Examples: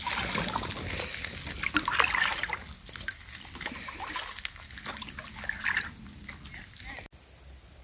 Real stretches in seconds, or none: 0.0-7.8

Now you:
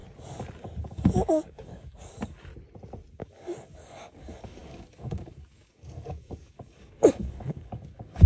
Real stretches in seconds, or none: 0.0-0.8; 2.5-3.1

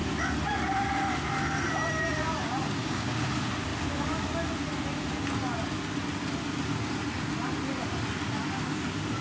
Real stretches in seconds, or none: 0.0-2.8; 3.3-9.2

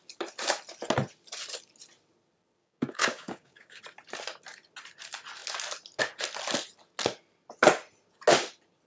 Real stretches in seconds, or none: 0.0-2.6; 3.8-8.9

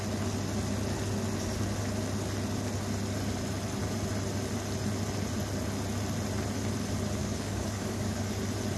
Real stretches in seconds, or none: 0.0-7.2; 8.3-8.8

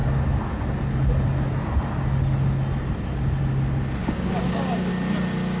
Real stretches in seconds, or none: 0.0-4.0; 4.9-5.6